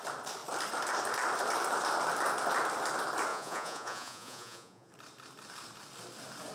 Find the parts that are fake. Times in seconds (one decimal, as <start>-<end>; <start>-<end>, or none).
3.3-4.9